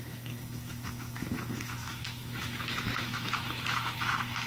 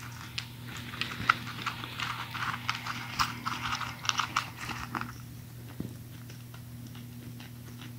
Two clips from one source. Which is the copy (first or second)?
first